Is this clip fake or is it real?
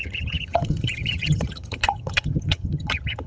fake